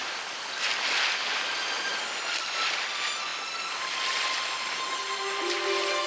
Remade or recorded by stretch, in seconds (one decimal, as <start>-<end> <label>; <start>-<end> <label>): 0.0-6.1 recorded